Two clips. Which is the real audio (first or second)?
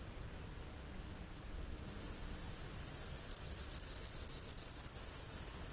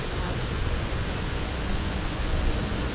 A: first